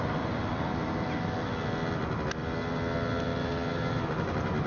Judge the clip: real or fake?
real